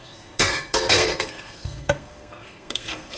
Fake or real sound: fake